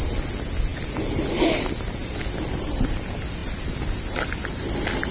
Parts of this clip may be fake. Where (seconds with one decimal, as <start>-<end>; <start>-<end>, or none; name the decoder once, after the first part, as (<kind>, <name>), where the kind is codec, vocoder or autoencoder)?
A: none